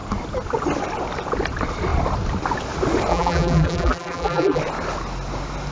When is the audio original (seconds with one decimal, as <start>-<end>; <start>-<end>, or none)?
0.0-3.1; 4.6-5.7